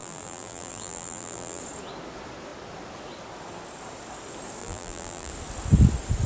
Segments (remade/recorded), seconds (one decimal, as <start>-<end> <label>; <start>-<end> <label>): 0.0-1.6 remade; 1.6-4.6 recorded; 4.6-5.3 remade; 5.3-6.3 recorded